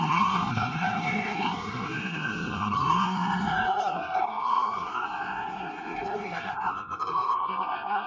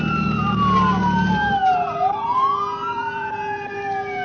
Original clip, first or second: second